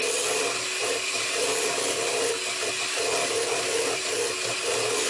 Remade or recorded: remade